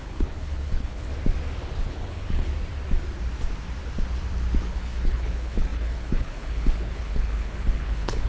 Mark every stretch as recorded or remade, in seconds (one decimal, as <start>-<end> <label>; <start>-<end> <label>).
0.0-1.1 remade; 1.1-1.8 recorded; 1.8-2.5 remade; 2.5-4.7 recorded; 4.7-8.3 remade